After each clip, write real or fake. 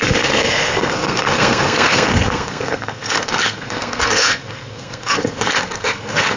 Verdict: fake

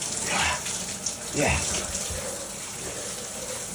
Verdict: real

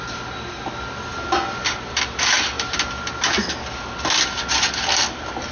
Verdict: real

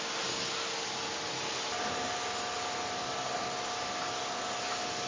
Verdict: real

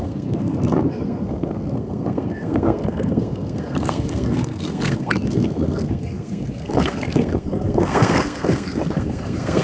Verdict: fake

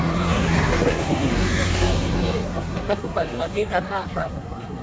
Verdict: fake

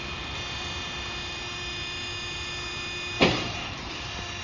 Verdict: real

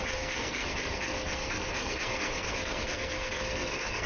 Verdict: fake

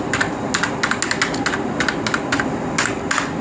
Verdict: real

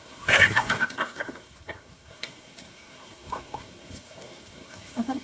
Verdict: fake